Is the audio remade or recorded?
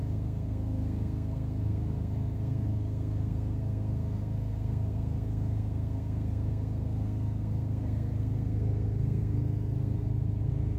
remade